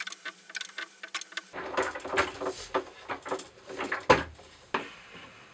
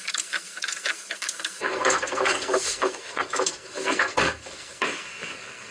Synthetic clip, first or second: second